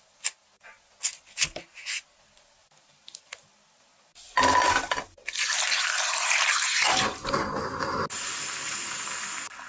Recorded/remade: recorded